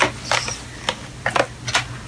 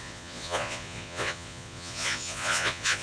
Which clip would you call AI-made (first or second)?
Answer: second